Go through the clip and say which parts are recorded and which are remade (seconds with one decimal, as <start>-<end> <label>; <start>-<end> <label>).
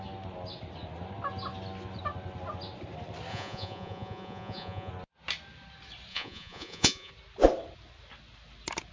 0.0-3.3 recorded; 3.3-4.9 remade; 4.9-6.1 recorded; 6.1-7.1 remade; 7.1-8.9 recorded